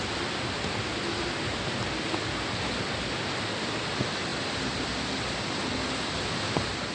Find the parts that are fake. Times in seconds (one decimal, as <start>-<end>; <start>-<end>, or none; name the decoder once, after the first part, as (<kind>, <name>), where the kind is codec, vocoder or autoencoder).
none